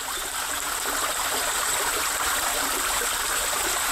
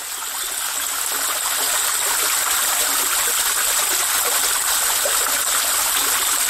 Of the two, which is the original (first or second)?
second